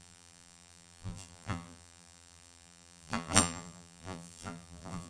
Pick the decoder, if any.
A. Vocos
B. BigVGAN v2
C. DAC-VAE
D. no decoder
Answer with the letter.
B